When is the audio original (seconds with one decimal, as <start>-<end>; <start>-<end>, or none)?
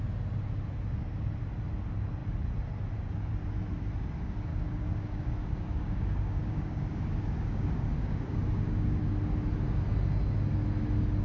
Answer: 0.0-4.5; 9.0-11.2